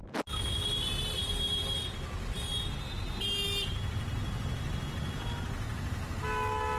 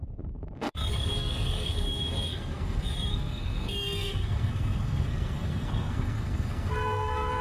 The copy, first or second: second